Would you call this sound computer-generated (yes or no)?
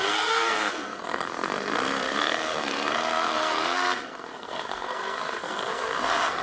yes